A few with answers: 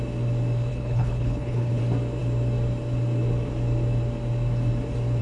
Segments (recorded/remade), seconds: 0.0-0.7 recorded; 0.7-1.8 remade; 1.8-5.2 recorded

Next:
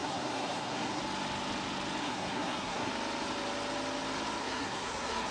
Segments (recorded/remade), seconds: 0.0-1.0 remade; 1.0-2.0 recorded; 2.0-2.9 remade; 2.9-4.4 recorded; 4.4-5.3 remade

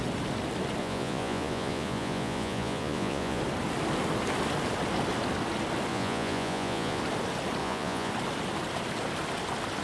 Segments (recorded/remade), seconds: 0.0-0.8 recorded; 0.8-3.4 remade; 3.4-5.9 recorded; 5.9-7.0 remade; 7.0-7.6 recorded; 7.6-8.1 remade; 8.1-9.8 recorded

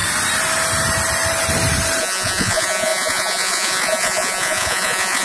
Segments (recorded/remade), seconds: 0.0-2.0 recorded; 2.0-5.2 remade

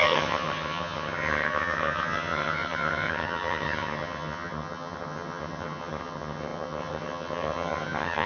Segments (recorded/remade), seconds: 0.0-8.3 remade

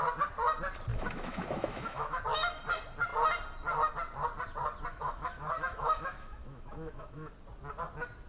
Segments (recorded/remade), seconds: 0.0-0.9 recorded; 0.9-2.2 remade; 2.2-4.9 recorded; 4.9-7.3 remade; 7.3-8.3 recorded

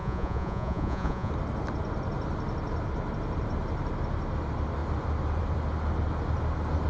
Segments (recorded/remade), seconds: 0.0-1.3 remade; 1.3-6.9 recorded

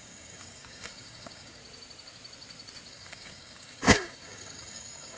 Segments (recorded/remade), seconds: 0.0-1.6 remade; 1.6-2.9 recorded; 2.9-5.2 remade